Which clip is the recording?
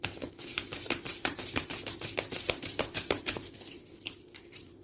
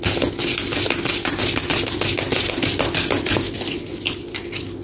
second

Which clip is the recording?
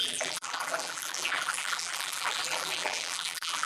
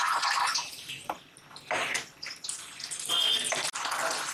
second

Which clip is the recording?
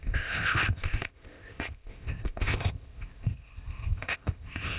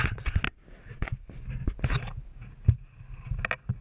second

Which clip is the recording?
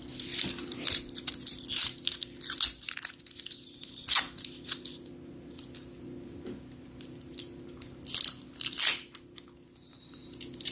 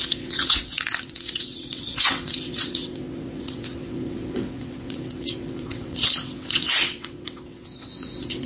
first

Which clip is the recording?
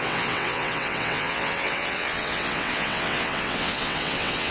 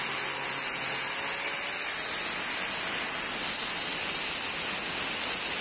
second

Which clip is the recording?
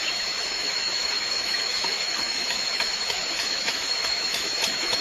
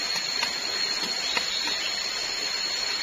second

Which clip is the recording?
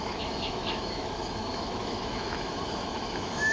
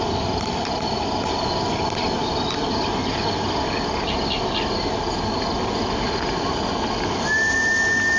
second